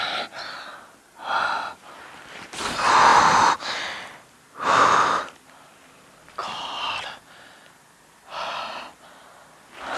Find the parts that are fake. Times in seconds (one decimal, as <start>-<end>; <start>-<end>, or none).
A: 0.0-3.1; 3.7-10.0